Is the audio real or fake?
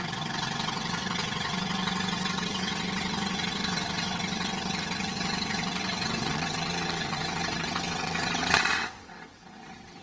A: fake